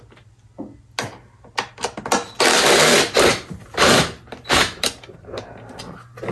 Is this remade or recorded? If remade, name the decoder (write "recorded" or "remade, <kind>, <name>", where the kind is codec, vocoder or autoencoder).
recorded